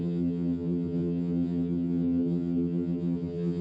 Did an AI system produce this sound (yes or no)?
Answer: yes